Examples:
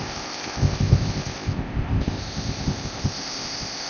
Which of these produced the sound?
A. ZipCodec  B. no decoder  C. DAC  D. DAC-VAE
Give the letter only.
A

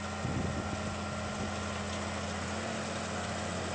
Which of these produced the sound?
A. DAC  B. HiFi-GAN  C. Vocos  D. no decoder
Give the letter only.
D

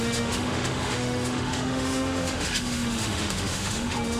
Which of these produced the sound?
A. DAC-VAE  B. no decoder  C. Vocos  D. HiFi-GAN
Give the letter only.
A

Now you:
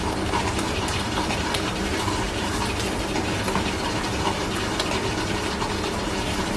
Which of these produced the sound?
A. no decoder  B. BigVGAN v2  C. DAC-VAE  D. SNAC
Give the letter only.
A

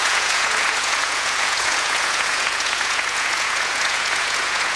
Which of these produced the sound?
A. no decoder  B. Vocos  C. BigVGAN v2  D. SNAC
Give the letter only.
B